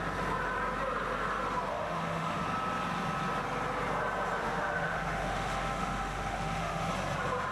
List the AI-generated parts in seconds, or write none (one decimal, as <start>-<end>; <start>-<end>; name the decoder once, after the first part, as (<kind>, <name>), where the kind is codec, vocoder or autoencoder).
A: 1.7-2.4 (autoencoder, DAC-VAE); 4.4-6.9